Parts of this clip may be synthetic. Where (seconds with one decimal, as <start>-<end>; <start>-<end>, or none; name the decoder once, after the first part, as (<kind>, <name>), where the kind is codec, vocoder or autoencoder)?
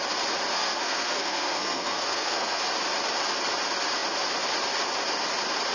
0.5-2.6 (codec, SNAC)